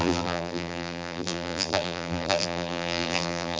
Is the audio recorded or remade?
remade